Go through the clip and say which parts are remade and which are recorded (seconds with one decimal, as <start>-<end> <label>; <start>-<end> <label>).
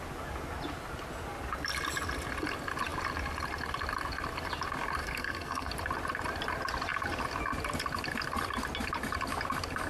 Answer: 0.0-5.0 recorded; 5.0-5.7 remade; 5.7-9.9 recorded